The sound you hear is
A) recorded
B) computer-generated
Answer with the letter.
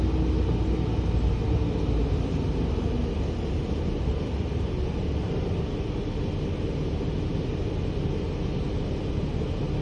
A